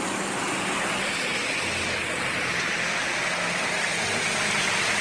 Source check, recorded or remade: recorded